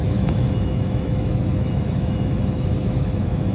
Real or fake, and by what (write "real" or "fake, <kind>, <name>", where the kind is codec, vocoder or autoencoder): fake, autoencoder, DAC-VAE